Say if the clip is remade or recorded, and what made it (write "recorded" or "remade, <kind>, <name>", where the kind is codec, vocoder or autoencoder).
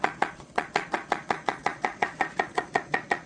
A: remade, vocoder, Vocos